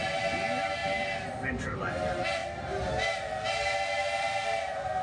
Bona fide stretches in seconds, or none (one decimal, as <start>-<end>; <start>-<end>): 0.0-5.0